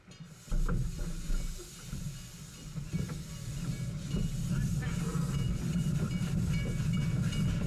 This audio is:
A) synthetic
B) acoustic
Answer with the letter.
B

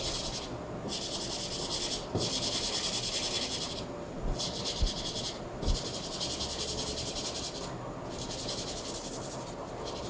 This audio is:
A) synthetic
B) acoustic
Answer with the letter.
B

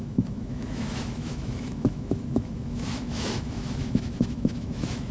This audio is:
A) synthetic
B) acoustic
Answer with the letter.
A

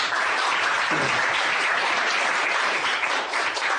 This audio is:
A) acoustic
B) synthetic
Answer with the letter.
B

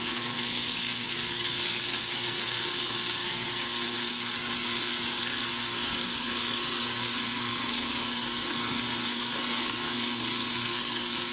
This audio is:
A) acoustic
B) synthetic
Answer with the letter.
B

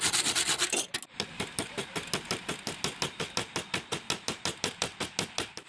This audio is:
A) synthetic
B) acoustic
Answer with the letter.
B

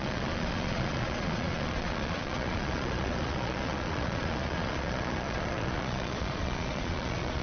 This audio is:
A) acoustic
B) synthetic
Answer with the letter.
B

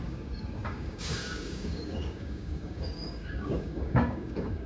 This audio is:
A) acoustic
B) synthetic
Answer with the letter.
B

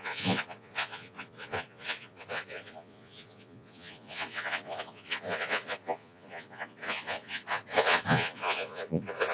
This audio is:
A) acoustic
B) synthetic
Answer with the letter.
B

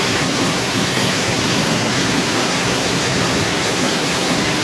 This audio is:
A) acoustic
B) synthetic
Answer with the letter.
B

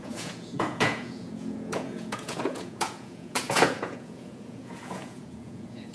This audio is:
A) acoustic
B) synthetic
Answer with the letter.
B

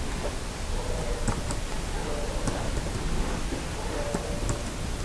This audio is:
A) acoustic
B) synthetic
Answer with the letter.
A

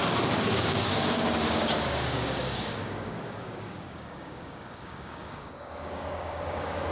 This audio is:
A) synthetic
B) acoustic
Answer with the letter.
A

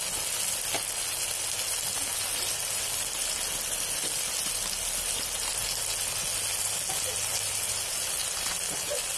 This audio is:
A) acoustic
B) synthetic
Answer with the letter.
A